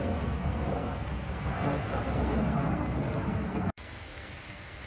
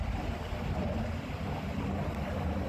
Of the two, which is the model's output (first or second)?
first